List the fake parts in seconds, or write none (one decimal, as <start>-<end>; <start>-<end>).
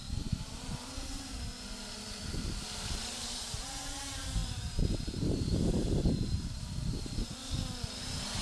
0.0-1.5; 2.8-7.4; 8.0-8.4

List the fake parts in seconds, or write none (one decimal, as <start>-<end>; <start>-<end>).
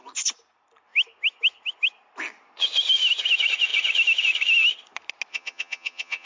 5.3-6.3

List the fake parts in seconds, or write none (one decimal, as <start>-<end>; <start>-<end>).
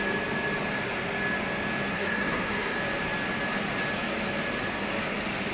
1.9-2.7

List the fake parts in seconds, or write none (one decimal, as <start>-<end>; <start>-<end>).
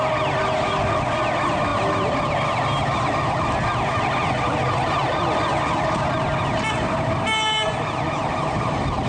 none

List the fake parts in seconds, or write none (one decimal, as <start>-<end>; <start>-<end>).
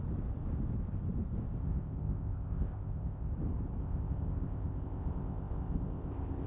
1.6-3.3; 3.8-6.5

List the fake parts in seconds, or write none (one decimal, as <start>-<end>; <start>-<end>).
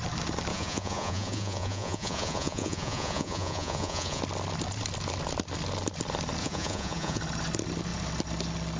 0.5-4.2; 6.4-7.2